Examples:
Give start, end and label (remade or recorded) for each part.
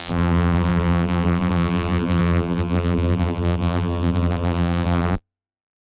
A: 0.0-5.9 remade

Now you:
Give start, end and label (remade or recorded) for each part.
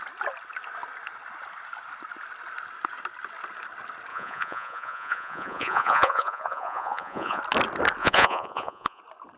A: 0.0-4.1 recorded; 4.1-7.4 remade; 7.4-8.0 recorded; 8.0-9.0 remade; 9.0-9.4 recorded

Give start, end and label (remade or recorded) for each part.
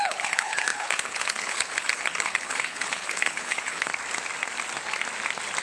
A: 0.0-3.9 remade; 3.9-5.6 recorded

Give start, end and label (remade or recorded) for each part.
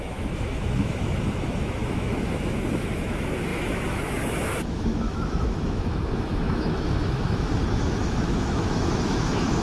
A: 0.0-9.6 remade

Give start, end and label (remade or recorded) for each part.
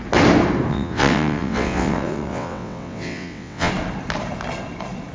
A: 0.0-0.7 recorded; 0.7-3.7 remade; 3.7-5.1 recorded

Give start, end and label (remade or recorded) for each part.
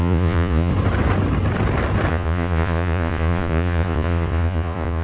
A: 0.0-0.7 remade; 0.7-2.1 recorded; 2.1-5.0 remade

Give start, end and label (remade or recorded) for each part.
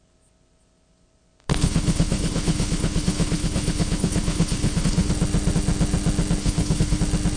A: 0.0-1.5 recorded; 1.5-5.1 remade; 5.1-6.4 recorded; 6.4-7.0 remade; 7.0-7.4 recorded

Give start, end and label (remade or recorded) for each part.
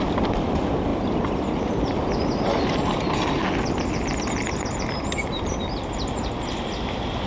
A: 0.0-7.3 recorded